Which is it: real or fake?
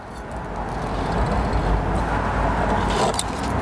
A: real